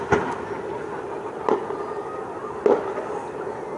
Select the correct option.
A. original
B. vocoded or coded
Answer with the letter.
A